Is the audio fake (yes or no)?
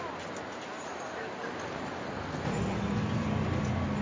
no